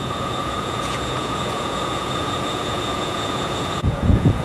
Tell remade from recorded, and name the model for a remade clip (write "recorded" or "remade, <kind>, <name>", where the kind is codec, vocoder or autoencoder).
remade, vocoder, Vocos